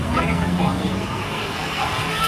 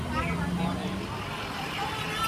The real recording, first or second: second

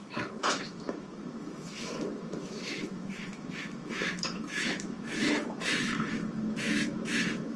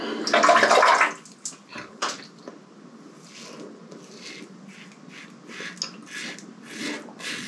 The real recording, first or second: second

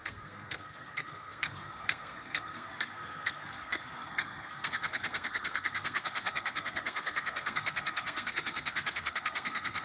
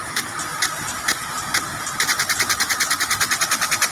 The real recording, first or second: second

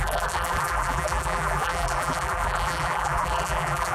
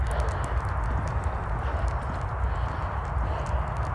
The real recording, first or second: second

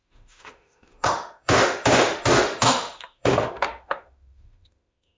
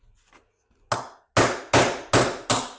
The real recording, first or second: second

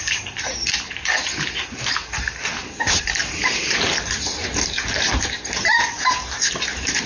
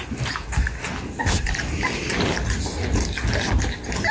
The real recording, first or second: second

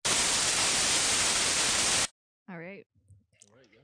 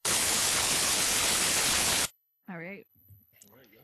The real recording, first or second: first